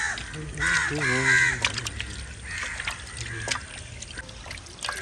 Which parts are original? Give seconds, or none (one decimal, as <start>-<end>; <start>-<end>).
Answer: 0.0-5.0